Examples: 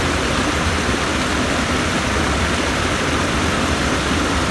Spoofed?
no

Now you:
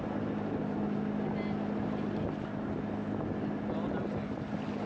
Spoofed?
no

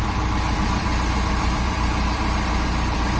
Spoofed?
yes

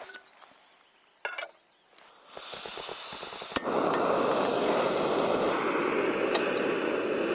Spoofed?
no